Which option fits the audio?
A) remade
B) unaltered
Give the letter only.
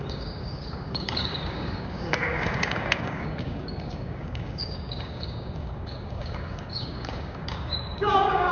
A